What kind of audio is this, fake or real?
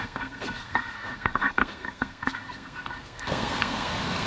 fake